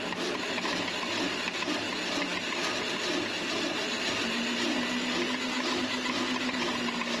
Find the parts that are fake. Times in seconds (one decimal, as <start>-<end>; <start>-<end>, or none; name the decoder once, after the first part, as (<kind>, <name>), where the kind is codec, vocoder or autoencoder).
none